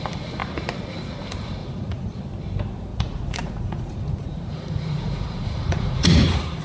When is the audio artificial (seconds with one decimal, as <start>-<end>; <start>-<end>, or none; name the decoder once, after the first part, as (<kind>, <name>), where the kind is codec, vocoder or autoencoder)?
1.6-2.2 (vocoder, Vocos); 2.9-6.6